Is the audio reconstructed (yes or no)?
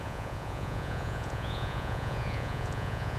yes